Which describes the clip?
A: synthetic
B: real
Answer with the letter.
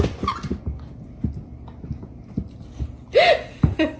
B